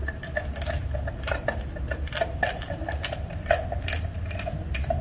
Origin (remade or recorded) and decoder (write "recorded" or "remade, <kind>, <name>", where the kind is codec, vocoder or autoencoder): recorded